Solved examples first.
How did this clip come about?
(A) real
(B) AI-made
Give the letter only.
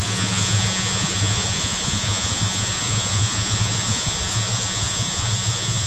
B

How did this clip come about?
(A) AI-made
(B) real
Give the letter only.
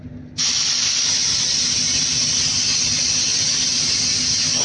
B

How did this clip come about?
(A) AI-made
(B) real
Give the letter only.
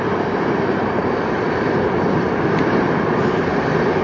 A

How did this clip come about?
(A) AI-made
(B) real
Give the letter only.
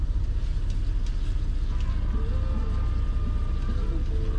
B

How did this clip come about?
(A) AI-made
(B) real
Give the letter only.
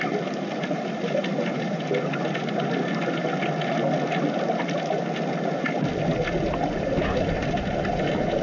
B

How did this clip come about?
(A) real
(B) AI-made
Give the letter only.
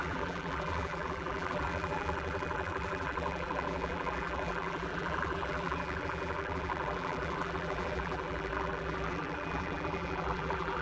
B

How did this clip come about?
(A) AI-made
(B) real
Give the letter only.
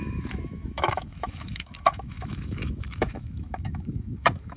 A